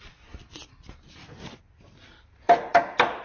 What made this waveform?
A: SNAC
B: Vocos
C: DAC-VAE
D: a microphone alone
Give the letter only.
D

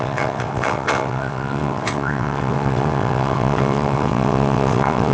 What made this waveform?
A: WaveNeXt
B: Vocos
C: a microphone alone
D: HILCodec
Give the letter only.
A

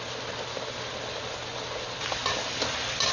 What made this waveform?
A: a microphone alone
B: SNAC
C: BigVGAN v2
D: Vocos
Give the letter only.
A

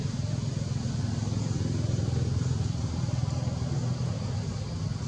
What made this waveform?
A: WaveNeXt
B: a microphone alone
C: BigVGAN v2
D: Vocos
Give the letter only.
B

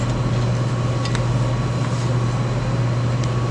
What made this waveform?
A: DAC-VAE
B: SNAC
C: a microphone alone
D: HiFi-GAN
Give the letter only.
C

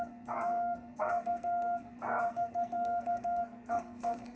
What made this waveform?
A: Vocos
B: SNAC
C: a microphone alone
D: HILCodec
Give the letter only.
B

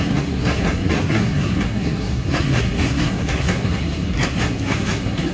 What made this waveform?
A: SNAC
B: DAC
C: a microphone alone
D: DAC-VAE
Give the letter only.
A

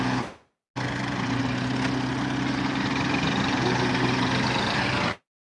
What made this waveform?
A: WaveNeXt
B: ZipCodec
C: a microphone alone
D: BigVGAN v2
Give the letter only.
C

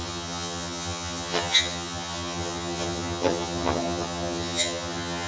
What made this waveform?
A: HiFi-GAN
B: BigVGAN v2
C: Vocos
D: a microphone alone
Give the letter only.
A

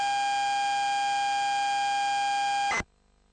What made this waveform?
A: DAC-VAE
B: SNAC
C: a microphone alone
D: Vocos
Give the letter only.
C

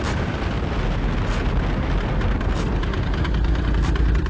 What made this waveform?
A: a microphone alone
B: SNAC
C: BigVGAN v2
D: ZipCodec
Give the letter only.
A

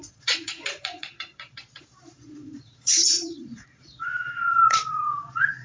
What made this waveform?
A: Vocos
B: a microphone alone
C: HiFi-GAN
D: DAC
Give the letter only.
A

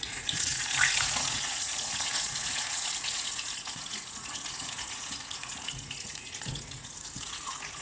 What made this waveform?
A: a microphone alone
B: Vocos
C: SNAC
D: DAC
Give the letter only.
B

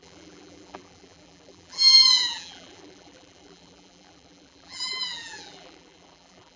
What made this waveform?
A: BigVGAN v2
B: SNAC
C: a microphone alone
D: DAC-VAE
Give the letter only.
A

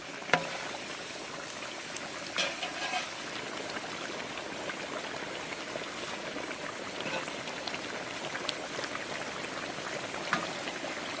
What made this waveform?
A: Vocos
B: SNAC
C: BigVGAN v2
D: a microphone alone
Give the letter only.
D